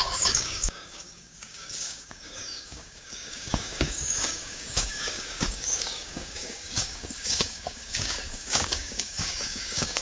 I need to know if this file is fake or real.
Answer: fake